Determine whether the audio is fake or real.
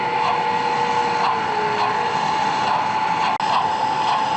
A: real